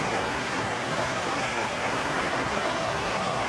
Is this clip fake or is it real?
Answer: fake